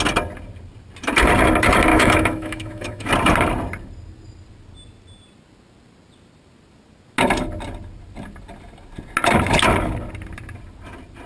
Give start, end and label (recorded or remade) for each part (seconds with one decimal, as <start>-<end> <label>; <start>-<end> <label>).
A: 0.0-1.9 recorded; 1.9-3.1 remade; 3.1-11.3 recorded